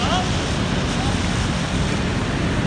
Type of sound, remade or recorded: recorded